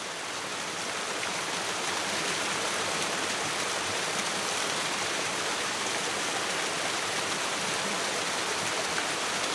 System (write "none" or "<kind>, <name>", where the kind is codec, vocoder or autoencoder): none